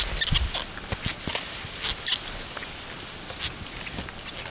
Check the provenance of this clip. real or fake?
real